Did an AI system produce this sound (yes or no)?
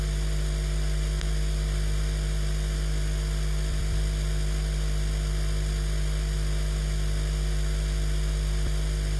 no